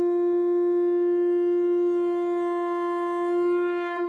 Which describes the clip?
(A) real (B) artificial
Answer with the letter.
A